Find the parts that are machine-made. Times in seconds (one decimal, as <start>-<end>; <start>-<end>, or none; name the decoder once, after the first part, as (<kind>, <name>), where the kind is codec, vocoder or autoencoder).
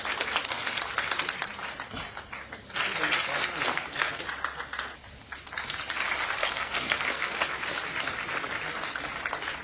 3.7-4.2 (codec, SNAC); 6.4-7.5